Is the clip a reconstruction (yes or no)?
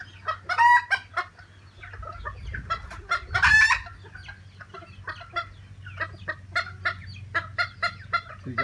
no